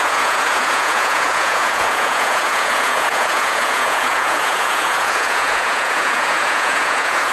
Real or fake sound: fake